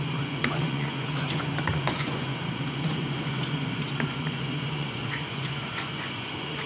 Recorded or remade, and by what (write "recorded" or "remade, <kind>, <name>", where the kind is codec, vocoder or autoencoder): remade, vocoder, Vocos